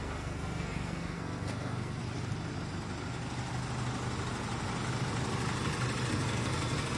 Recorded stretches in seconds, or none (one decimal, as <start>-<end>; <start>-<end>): 2.0-6.1